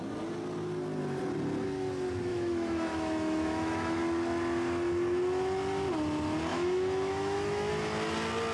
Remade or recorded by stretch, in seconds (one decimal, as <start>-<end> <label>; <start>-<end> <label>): 0.0-2.3 recorded; 2.3-4.0 remade; 4.0-6.5 recorded; 6.5-7.7 remade; 7.7-8.5 recorded